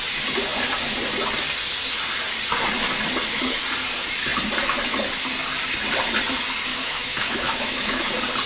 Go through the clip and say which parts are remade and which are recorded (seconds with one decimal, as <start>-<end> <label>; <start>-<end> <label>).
0.0-6.7 recorded; 6.7-8.1 remade; 8.1-8.5 recorded